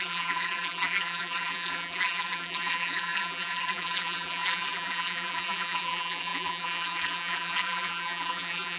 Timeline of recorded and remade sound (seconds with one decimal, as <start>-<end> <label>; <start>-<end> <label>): 0.0-8.8 remade